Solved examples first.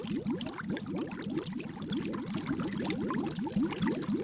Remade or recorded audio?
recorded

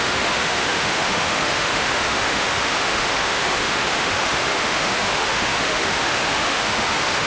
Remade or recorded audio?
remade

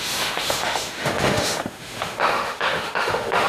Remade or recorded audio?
remade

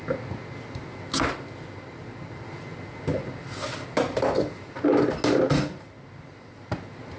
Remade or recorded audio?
recorded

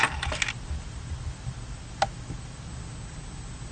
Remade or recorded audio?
recorded